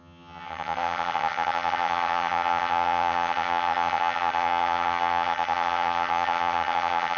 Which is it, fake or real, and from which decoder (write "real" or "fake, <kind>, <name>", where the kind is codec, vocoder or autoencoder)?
fake, vocoder, HiFi-GAN